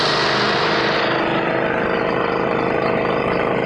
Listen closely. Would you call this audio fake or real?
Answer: real